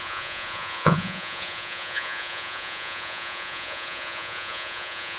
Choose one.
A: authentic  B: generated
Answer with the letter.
B